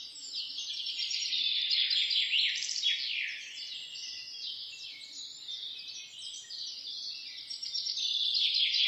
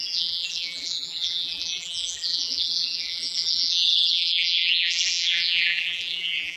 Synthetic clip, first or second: second